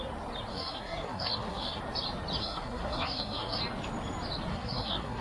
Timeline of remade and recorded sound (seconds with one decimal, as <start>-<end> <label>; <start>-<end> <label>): 0.0-0.5 recorded; 0.5-1.8 remade; 1.8-2.4 recorded; 2.4-3.6 remade; 3.6-4.5 recorded; 4.5-5.2 remade